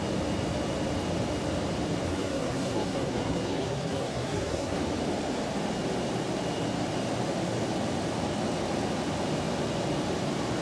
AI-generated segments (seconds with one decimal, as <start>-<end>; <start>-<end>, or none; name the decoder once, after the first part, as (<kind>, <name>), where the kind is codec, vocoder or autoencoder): 2.1-4.8 (codec, SNAC)